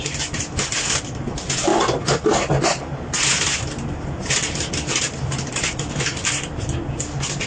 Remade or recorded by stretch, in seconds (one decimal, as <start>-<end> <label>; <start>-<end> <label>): 0.0-7.5 recorded